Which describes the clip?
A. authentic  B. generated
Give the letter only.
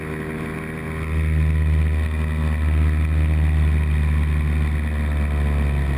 A